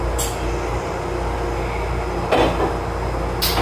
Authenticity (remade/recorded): recorded